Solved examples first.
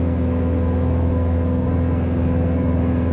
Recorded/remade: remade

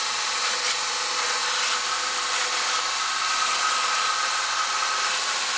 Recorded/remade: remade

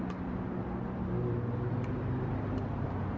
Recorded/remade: recorded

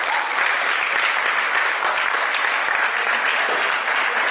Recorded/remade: recorded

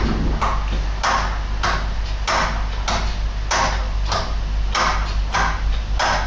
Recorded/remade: recorded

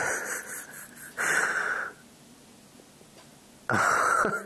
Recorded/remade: recorded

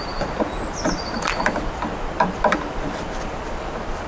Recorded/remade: remade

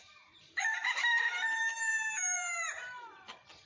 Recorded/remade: remade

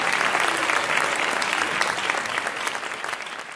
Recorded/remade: recorded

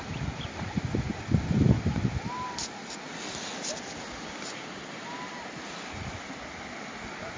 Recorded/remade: recorded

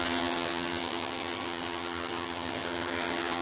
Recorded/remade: remade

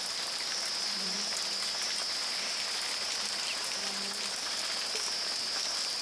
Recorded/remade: recorded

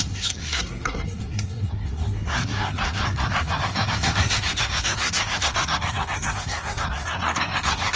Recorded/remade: remade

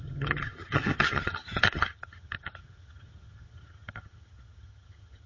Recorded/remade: remade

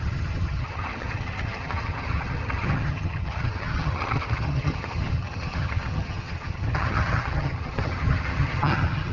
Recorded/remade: remade